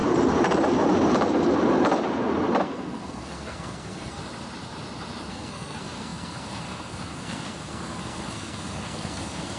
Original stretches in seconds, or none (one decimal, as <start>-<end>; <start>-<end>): 0.0-2.6; 4.2-5.3